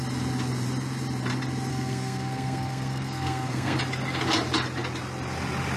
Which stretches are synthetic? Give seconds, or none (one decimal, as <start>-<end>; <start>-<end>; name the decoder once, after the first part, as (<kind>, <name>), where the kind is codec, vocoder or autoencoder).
1.7-3.8 (codec, SNAC)